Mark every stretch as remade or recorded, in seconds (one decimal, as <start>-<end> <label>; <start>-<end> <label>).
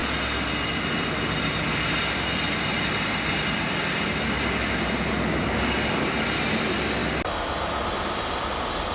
0.0-8.9 recorded